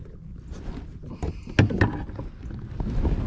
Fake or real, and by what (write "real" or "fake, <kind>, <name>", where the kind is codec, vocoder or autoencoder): real